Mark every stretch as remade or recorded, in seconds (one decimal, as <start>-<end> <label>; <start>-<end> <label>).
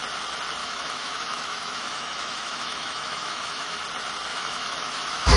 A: 0.0-0.6 recorded; 0.6-3.8 remade; 3.8-4.3 recorded; 4.3-5.4 remade